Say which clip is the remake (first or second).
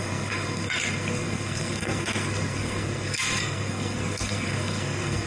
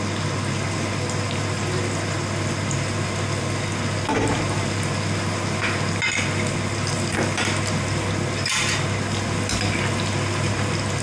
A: first